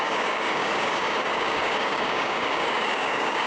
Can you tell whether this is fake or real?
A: fake